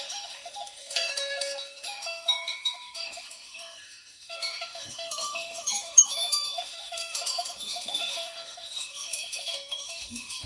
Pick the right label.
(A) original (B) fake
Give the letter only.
B